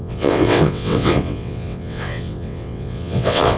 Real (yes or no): no